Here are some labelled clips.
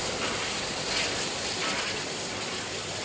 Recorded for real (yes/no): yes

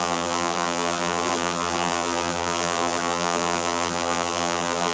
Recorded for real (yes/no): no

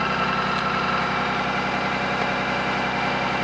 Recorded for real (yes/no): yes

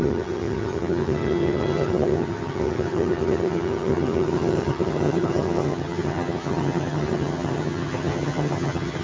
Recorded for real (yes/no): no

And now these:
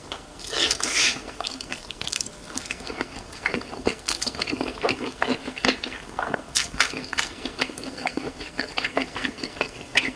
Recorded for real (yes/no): no